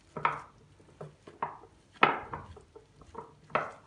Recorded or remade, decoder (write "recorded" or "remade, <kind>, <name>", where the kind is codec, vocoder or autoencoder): recorded